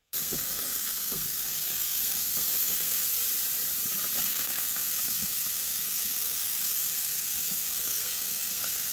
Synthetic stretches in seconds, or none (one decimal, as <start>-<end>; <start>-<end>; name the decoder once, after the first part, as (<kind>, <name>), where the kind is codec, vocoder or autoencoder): 0.0-3.2 (codec, SNAC); 4.2-8.9